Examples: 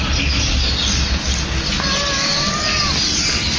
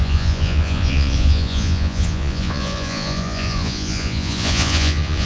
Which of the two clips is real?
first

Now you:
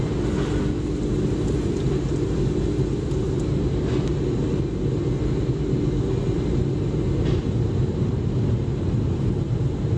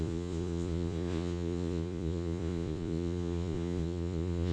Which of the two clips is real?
first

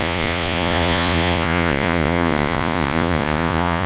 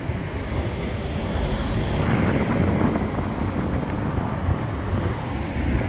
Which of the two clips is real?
second